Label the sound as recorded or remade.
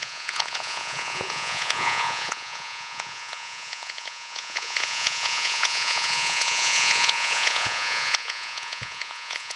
remade